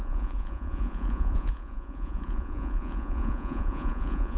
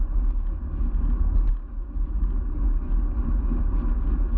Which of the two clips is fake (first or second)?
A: first